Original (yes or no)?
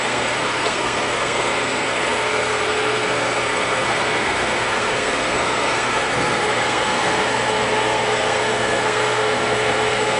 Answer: no